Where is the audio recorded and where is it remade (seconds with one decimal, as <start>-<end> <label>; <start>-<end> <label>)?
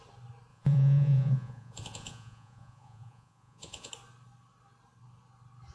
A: 0.0-0.5 recorded; 0.5-3.9 remade; 3.9-5.7 recorded